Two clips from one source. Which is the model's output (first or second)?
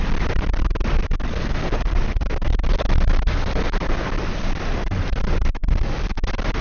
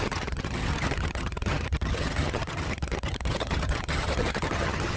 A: second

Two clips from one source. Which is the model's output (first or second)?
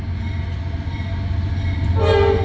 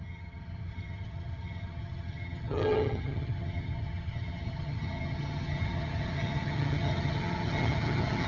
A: second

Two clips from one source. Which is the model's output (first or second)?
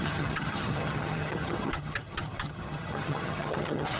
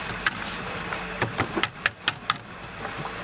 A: first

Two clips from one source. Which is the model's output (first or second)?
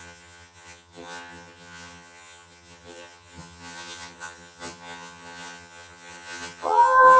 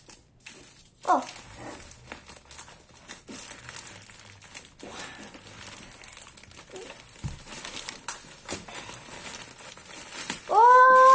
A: first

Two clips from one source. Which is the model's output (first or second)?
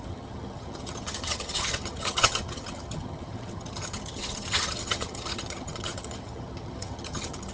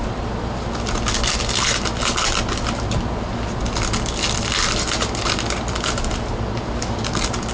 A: first